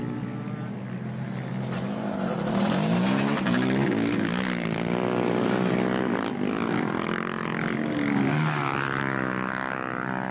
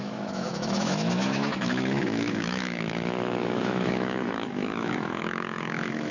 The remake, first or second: second